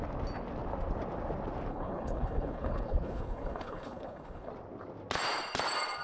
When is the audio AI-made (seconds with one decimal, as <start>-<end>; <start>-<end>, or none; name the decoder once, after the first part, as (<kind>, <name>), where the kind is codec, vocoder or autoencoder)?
1.7-4.5 (codec, HILCodec)